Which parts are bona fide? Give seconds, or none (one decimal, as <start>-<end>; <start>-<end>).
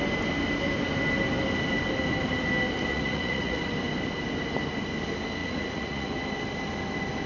0.0-2.9; 3.6-5.4; 6.1-7.3